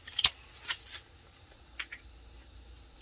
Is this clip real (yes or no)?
yes